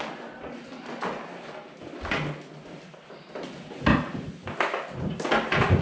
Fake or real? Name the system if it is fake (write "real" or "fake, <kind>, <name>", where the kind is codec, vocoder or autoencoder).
real